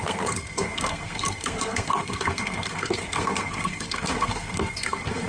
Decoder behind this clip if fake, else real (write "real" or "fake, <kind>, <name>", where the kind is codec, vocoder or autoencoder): fake, codec, SNAC